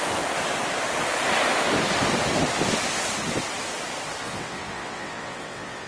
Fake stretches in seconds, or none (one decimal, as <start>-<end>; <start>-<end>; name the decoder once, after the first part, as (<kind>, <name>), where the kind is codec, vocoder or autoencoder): 4.2-5.9 (vocoder, WaveNeXt)